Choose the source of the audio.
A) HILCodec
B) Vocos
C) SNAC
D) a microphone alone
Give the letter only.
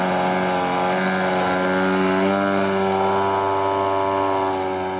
D